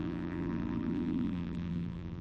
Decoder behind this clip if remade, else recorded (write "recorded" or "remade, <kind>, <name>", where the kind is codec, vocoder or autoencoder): remade, vocoder, BigVGAN v2